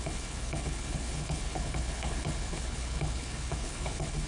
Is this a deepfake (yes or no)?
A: yes